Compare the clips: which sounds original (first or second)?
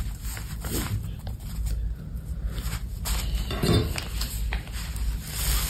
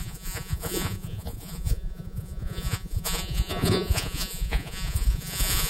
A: first